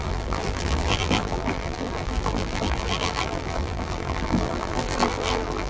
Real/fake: fake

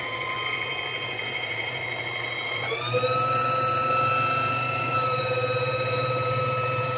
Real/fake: real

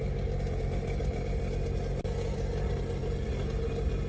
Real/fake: real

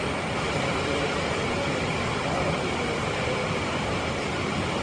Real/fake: real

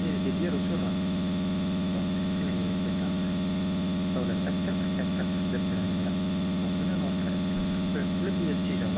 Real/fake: fake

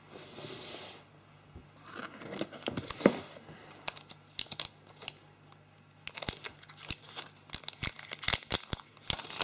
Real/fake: real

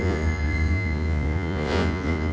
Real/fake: fake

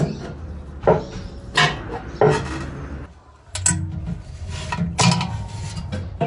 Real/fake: real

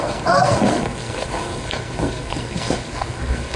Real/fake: fake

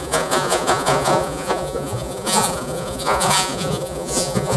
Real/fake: fake